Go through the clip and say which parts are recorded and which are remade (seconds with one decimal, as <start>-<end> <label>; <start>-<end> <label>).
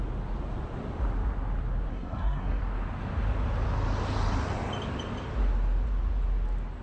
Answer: 0.0-1.9 recorded; 1.9-2.6 remade; 2.6-6.8 recorded